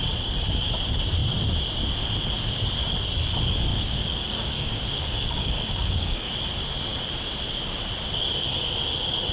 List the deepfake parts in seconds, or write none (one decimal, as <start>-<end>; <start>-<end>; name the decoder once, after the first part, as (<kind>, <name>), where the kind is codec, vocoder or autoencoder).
3.7-6.3 (codec, DAC)